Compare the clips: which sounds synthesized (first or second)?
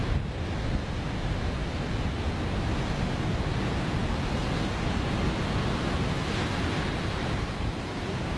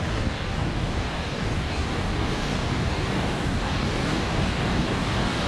second